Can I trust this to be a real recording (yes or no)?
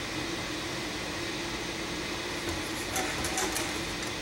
yes